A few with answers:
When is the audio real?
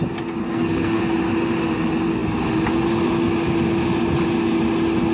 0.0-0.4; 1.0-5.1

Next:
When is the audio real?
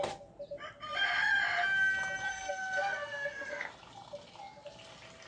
0.0-2.3; 3.7-5.3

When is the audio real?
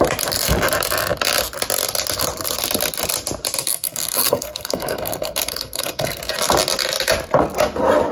0.0-3.6; 6.2-8.1